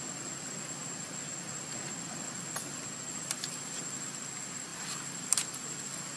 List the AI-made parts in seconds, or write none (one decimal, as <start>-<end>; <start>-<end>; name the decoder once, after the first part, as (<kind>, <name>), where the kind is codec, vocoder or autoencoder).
none